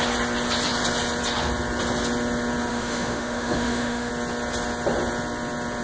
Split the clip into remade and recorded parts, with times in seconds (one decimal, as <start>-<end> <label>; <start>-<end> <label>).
0.0-2.7 recorded; 2.7-4.1 remade; 4.1-5.8 recorded